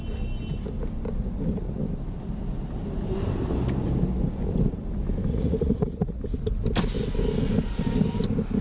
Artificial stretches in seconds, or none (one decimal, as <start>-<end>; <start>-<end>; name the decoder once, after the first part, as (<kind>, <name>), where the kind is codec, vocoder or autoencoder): 5.3-6.2 (vocoder, Vocos)